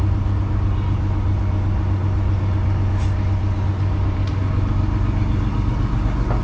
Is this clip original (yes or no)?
yes